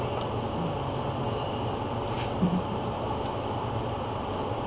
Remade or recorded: recorded